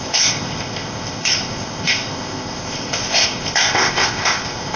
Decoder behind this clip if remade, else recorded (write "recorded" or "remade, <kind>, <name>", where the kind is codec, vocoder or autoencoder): remade, codec, ZipCodec